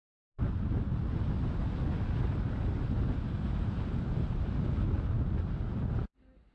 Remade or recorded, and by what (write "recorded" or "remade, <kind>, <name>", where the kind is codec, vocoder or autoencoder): recorded